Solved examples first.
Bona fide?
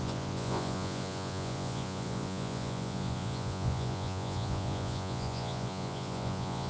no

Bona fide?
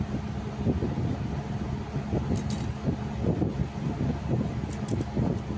yes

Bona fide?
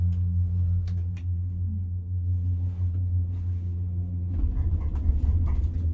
yes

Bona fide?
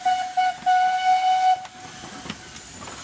yes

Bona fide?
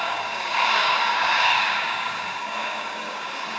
no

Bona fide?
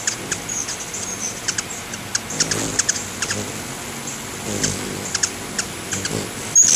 yes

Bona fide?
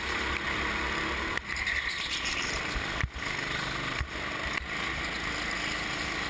yes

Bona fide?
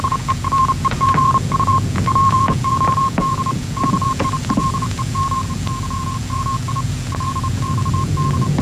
no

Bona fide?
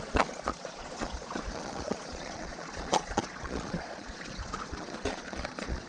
no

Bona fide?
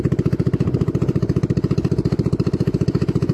yes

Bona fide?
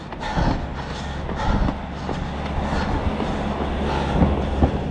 yes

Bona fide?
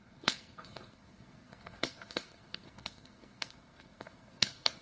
no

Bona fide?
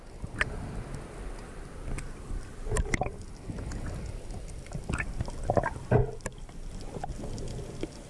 yes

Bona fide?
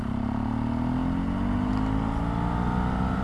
yes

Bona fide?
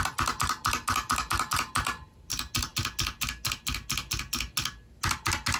yes